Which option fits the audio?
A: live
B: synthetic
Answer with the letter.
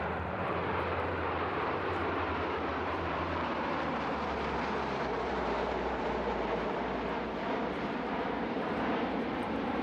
B